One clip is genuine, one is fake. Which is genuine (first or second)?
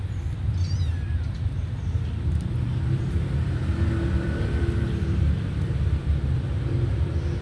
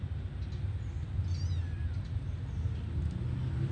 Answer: second